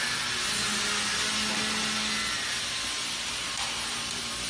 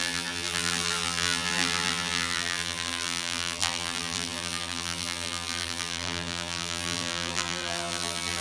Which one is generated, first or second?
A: second